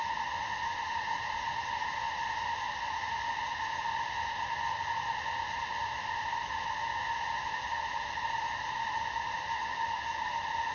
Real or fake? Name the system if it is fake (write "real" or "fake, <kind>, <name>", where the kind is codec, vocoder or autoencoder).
real